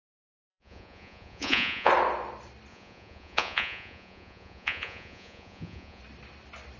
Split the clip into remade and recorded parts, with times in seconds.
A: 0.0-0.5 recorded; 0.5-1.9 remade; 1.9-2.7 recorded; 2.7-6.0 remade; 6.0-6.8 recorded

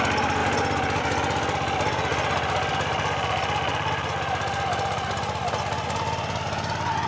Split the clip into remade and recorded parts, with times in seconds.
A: 0.0-7.1 recorded

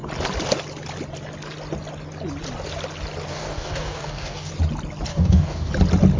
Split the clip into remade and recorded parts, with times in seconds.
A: 0.0-3.3 recorded; 3.3-4.5 remade; 4.5-5.1 recorded; 5.1-5.7 remade; 5.7-6.2 recorded

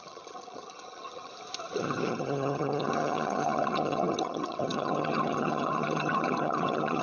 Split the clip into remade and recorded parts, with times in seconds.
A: 0.0-1.3 remade; 1.3-1.8 recorded; 1.8-7.0 remade

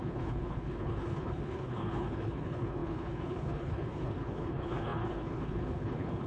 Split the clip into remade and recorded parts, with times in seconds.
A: 0.0-6.3 remade

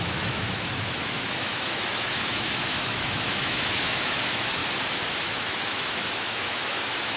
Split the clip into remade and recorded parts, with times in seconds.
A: 0.0-4.6 remade; 4.6-5.2 recorded; 5.2-7.2 remade

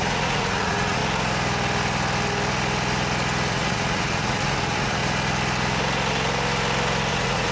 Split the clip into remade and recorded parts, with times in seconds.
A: 0.0-1.0 remade; 1.0-3.5 recorded; 3.5-5.0 remade; 5.0-7.1 recorded; 7.1-7.5 remade

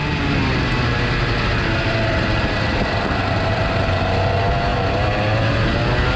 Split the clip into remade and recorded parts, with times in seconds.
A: 0.0-6.2 recorded